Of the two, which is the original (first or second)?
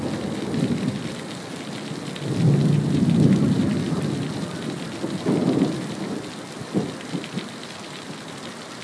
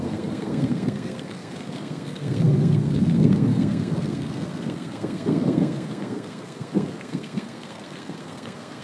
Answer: first